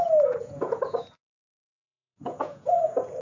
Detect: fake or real fake